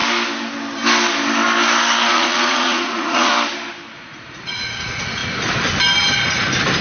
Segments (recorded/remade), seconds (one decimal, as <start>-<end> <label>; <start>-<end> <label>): 0.0-2.1 recorded; 2.1-3.3 remade; 3.3-3.9 recorded; 3.9-5.2 remade; 5.2-6.8 recorded